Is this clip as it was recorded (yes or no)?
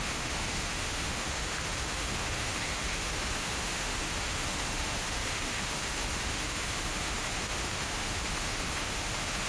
no